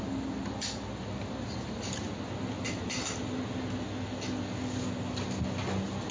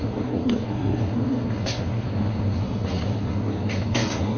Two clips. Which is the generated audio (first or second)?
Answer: second